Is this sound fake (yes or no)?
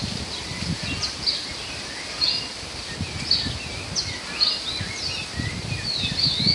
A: no